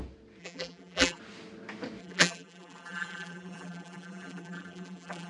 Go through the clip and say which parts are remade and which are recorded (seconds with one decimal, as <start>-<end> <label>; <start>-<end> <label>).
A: 0.0-0.4 recorded; 0.4-1.2 remade; 1.2-2.0 recorded; 2.0-5.3 remade